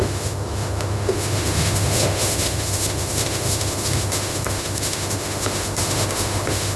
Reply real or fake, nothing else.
fake